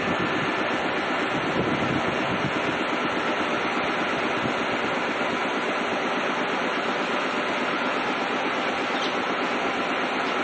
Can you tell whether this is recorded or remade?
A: recorded